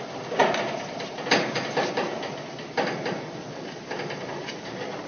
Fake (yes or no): no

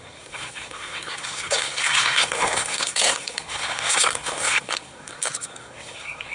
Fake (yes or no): yes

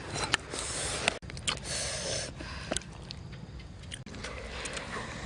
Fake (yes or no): no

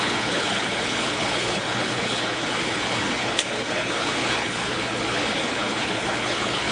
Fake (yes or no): yes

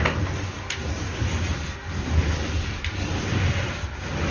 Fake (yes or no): no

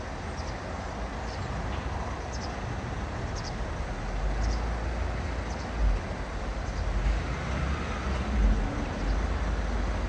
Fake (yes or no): no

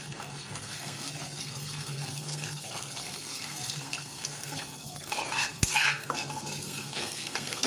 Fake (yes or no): yes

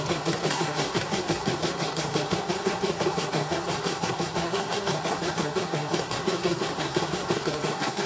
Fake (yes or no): yes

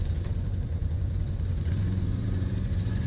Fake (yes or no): yes